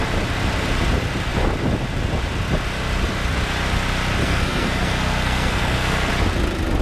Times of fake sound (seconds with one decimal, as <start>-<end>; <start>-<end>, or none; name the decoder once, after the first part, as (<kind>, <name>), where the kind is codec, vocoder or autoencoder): 4.2-6.1 (codec, SNAC)